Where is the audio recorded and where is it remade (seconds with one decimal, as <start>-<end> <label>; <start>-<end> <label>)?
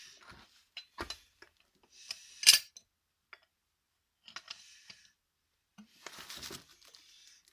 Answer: 0.0-7.5 recorded